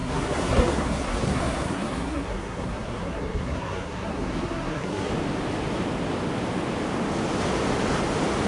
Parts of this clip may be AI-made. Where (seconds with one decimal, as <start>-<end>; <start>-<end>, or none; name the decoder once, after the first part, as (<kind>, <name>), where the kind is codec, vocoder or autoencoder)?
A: 0.0-5.1 (codec, SNAC)